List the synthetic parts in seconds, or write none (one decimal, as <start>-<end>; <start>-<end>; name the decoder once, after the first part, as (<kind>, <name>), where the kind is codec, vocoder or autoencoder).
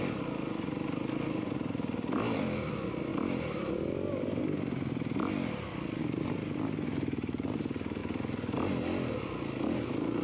none